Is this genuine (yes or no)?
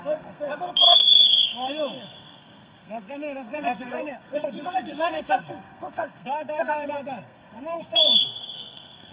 no